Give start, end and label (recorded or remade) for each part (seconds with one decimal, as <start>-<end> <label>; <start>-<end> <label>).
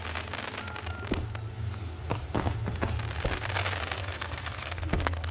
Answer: 0.0-4.0 recorded; 4.0-5.3 remade